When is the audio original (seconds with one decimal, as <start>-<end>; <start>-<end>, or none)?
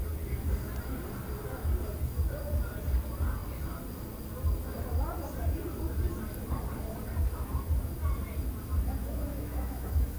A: 0.0-9.0